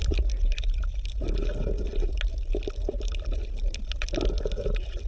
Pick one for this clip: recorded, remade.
recorded